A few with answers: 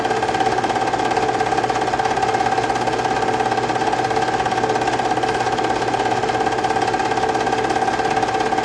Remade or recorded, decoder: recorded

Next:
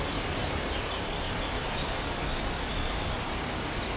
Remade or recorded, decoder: recorded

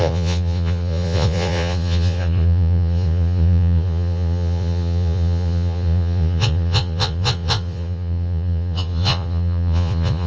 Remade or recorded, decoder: remade, vocoder, Vocos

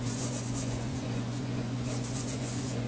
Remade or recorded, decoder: remade, vocoder, Vocos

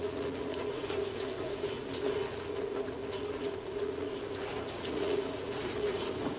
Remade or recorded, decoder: remade, vocoder, Vocos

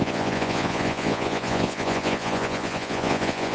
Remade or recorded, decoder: remade, vocoder, Vocos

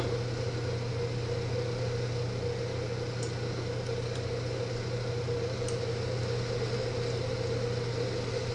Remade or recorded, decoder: recorded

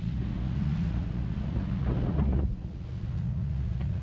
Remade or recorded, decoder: remade, vocoder, Vocos